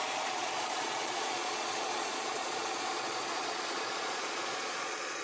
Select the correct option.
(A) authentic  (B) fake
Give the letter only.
B